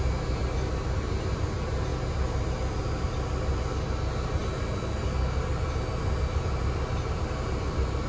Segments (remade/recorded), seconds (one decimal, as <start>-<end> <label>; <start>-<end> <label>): 0.0-8.1 recorded

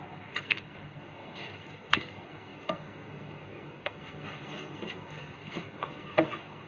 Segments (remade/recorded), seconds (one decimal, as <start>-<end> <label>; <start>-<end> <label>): 0.0-6.7 remade